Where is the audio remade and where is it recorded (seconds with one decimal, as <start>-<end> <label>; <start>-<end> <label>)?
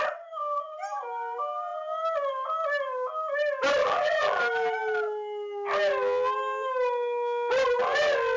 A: 0.0-3.8 recorded; 3.8-4.4 remade; 4.4-8.4 recorded